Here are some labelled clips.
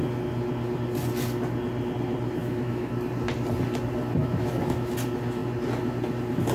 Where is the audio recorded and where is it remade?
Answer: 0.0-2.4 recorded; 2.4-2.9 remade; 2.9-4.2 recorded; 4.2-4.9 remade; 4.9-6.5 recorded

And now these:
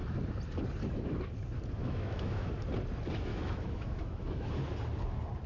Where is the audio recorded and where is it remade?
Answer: 0.0-1.8 recorded; 1.8-2.5 remade; 2.5-3.3 recorded; 3.3-4.5 remade; 4.5-5.5 recorded

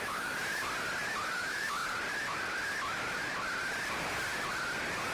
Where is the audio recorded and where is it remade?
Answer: 0.0-0.4 remade; 0.4-1.1 recorded; 1.1-1.8 remade; 1.8-5.1 recorded

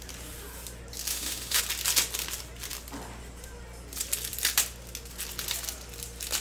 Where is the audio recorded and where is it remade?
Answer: 0.0-1.1 recorded; 1.1-1.6 remade; 1.6-6.4 recorded